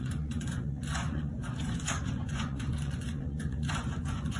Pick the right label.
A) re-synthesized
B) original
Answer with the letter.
A